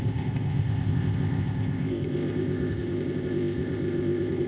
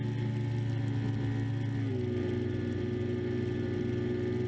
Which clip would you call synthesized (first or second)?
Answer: first